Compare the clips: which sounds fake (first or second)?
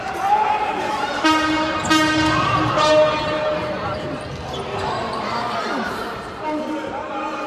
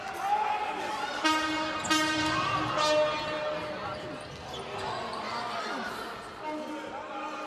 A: first